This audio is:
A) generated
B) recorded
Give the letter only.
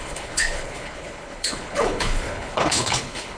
A